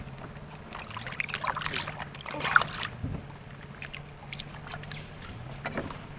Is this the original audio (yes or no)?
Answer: yes